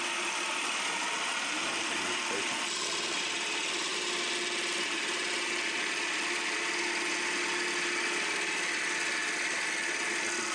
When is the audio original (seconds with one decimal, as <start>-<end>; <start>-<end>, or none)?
0.0-10.5